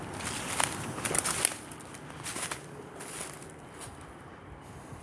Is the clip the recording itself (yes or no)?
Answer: yes